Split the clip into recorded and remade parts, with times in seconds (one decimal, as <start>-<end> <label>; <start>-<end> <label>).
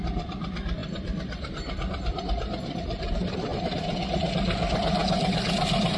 0.0-0.8 recorded; 0.8-2.2 remade; 2.2-6.0 recorded